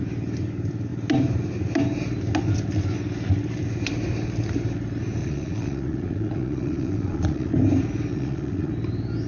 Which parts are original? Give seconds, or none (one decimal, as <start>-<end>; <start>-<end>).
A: 0.0-5.2; 7.5-8.1; 8.7-9.3